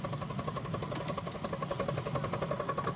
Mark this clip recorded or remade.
recorded